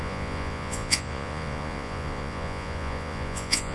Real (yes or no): no